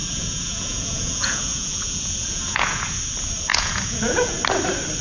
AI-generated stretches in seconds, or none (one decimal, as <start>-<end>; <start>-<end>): 0.0-3.0; 3.5-4.4